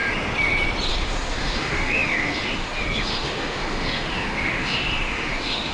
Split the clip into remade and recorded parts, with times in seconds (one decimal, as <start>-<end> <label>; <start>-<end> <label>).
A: 0.0-0.9 recorded; 0.9-5.7 remade